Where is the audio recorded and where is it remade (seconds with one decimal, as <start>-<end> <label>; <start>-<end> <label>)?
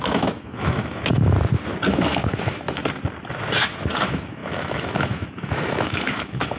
0.0-1.1 remade; 1.1-1.9 recorded; 1.9-2.8 remade; 2.8-3.6 recorded; 3.6-6.6 remade